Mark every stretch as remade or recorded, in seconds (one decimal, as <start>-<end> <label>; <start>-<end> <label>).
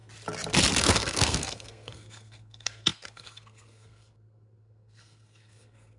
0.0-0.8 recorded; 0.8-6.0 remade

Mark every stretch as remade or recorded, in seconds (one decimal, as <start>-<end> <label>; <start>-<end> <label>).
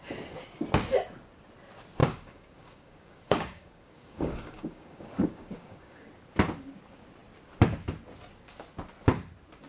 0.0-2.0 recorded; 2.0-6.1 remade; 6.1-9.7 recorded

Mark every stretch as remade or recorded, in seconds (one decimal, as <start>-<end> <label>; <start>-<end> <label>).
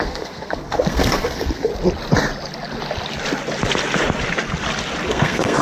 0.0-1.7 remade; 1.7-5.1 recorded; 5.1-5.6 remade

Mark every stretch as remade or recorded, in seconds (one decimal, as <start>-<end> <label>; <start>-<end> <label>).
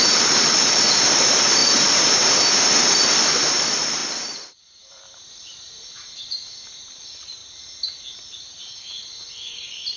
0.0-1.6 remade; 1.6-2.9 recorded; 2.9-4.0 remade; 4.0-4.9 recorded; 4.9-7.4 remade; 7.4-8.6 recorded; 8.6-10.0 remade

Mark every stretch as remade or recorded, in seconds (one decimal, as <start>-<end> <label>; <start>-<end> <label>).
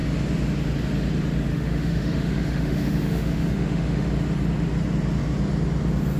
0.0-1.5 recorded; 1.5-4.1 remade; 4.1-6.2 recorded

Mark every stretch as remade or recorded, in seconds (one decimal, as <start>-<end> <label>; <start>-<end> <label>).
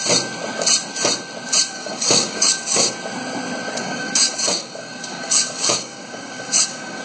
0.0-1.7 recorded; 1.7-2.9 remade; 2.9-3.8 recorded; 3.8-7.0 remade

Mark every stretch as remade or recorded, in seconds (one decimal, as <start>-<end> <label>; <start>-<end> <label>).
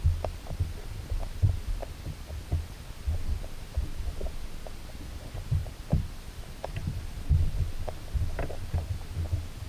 0.0-1.8 recorded; 1.8-2.6 remade; 2.6-5.6 recorded; 5.6-6.2 remade; 6.2-9.7 recorded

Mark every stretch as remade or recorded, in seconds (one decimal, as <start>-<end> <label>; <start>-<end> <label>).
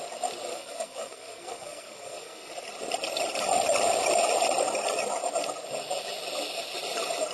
0.0-0.5 recorded; 0.5-2.5 remade; 2.5-7.3 recorded